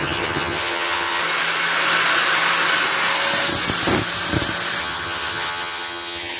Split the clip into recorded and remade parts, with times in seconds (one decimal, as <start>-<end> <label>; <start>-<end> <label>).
0.0-1.2 remade; 1.2-4.8 recorded; 4.8-6.4 remade

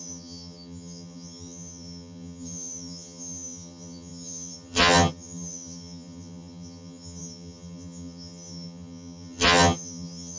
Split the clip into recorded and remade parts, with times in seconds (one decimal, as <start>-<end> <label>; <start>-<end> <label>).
0.0-10.4 remade

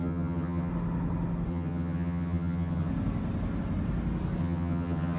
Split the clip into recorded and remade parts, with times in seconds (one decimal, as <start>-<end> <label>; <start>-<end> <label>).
0.0-0.7 remade; 0.7-1.5 recorded; 1.5-2.9 remade; 2.9-4.4 recorded; 4.4-5.2 remade

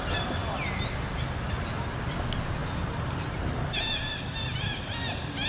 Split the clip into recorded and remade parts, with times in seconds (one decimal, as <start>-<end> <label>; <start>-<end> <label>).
0.0-5.5 recorded

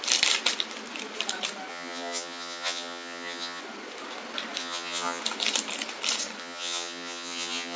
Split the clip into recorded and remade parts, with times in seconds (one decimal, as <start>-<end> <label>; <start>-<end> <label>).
0.0-1.7 recorded; 1.7-3.6 remade; 3.6-4.6 recorded; 4.6-5.2 remade; 5.2-6.4 recorded; 6.4-7.8 remade